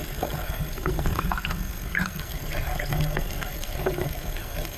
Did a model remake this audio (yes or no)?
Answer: yes